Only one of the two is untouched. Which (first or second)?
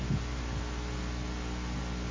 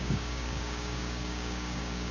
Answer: first